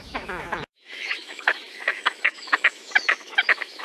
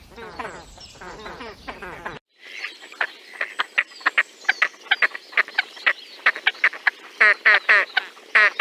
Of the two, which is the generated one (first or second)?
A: first